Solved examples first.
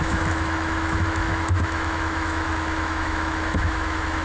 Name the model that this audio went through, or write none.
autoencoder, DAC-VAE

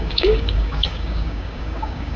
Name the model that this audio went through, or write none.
codec, DAC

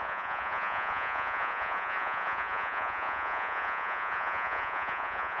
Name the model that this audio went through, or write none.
vocoder, Vocos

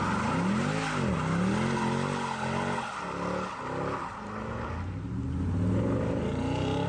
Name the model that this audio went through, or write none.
none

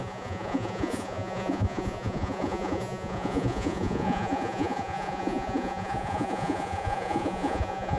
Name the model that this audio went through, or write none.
vocoder, Vocos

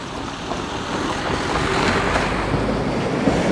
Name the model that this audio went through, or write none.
none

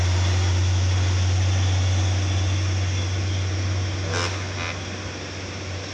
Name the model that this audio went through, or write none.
none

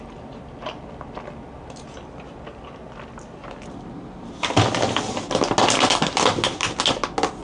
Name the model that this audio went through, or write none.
none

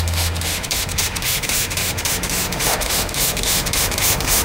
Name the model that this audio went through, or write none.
autoencoder, DAC-VAE